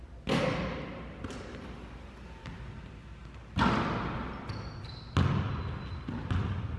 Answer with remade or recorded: recorded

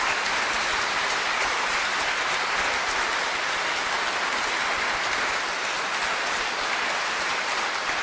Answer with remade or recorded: recorded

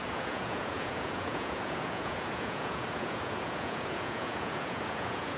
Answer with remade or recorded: remade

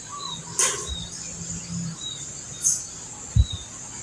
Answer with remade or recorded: recorded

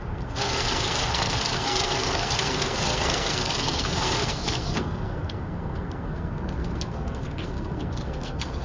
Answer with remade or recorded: remade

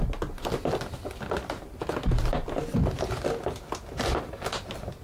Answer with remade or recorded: recorded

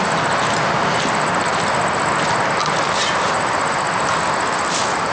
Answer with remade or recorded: recorded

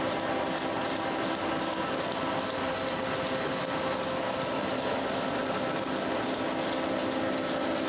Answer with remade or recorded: recorded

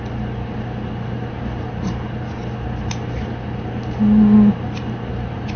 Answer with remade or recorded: recorded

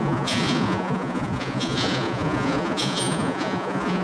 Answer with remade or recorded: remade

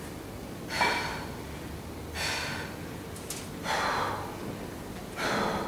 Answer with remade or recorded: recorded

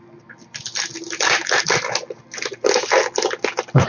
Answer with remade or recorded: recorded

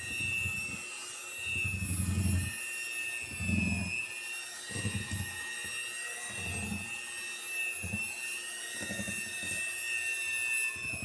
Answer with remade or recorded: recorded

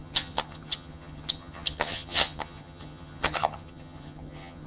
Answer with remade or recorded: remade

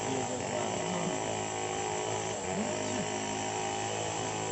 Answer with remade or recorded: recorded